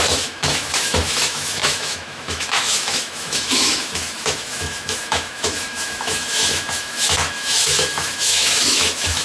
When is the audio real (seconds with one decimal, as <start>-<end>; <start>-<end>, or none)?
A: none